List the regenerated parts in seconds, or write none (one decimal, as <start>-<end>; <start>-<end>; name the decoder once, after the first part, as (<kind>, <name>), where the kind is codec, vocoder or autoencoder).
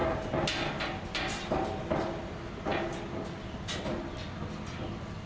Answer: none